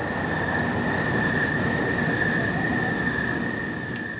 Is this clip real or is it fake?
real